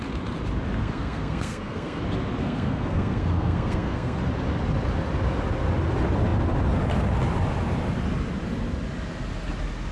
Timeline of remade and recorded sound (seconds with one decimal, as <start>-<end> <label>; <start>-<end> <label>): 0.0-0.8 recorded; 0.8-2.0 remade; 2.0-2.4 recorded; 2.4-4.2 remade; 4.2-9.9 recorded

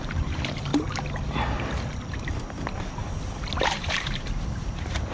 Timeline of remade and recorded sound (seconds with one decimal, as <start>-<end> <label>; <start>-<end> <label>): 0.0-0.7 remade; 0.7-3.6 recorded; 3.6-5.1 remade

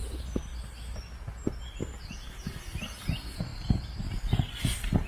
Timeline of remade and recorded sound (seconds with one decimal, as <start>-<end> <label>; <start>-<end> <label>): 0.0-5.1 recorded

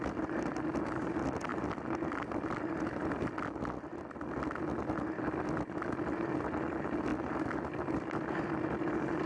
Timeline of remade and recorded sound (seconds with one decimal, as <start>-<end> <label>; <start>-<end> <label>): 0.0-9.3 recorded

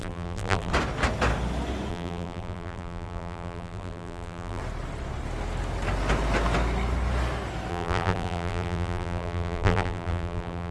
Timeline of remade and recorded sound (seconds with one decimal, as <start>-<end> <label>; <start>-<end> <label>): 0.0-0.7 remade; 0.7-1.9 recorded; 1.9-4.6 remade; 4.6-7.7 recorded; 7.7-10.7 remade

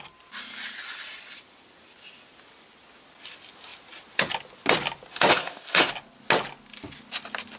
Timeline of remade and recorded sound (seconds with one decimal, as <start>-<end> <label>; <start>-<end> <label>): 0.0-5.3 recorded; 5.3-5.9 remade; 5.9-7.6 recorded

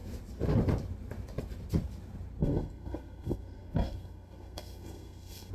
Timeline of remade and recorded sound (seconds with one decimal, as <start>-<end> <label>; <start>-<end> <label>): 0.0-2.4 recorded; 2.4-5.5 remade

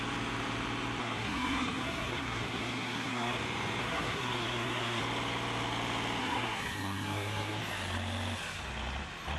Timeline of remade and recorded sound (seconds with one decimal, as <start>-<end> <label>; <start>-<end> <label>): 0.0-1.0 recorded; 1.0-3.4 remade; 3.4-3.8 recorded; 3.8-5.0 remade; 5.0-6.2 recorded; 6.2-7.6 remade; 7.6-9.4 recorded